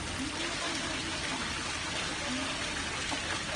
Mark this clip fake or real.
real